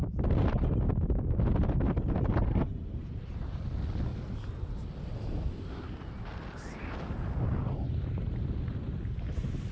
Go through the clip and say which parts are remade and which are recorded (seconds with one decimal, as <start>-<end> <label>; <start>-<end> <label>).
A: 0.0-9.7 recorded